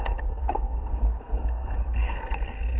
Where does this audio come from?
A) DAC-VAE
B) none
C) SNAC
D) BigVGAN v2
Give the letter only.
C